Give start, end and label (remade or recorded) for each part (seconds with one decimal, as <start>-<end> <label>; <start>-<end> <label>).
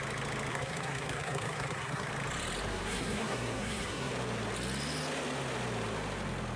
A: 0.0-0.5 recorded; 0.5-2.1 remade; 2.1-2.7 recorded; 2.7-4.1 remade; 4.1-6.6 recorded